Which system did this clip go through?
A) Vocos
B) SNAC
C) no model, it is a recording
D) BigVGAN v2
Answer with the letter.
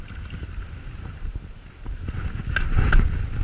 C